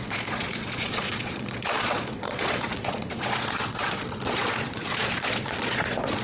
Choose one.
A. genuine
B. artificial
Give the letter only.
B